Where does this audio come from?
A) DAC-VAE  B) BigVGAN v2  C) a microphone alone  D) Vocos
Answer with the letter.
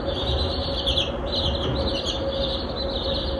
C